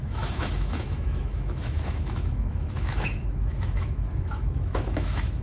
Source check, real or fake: fake